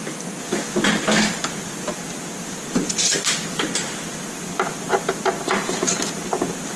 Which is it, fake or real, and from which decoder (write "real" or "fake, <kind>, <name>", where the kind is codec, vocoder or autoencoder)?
real